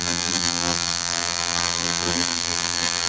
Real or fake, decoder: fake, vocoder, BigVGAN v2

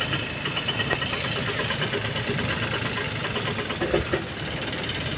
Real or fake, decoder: real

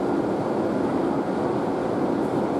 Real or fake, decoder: real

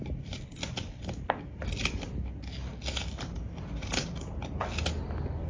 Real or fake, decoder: real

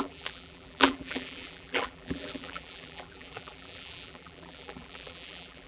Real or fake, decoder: fake, vocoder, BigVGAN v2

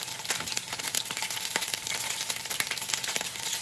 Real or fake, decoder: real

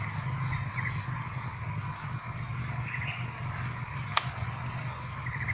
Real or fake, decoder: real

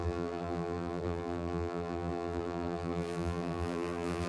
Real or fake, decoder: fake, vocoder, BigVGAN v2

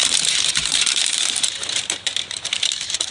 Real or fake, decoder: fake, vocoder, BigVGAN v2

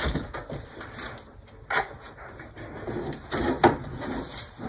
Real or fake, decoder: real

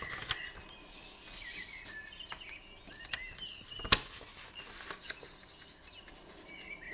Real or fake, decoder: real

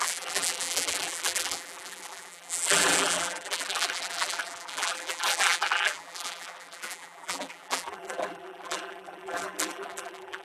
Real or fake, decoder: fake, vocoder, BigVGAN v2